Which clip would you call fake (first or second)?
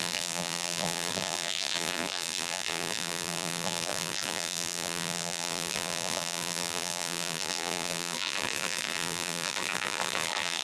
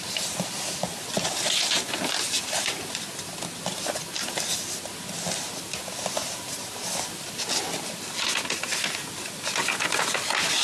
first